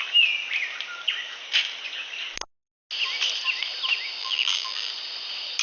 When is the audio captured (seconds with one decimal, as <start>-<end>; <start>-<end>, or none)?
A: 0.0-4.2; 4.9-5.6